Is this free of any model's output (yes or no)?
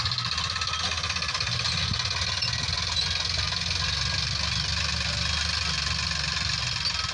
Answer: yes